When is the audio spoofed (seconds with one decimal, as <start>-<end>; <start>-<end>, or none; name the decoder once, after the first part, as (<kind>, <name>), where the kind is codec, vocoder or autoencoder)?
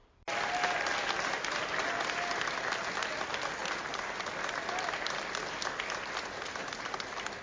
none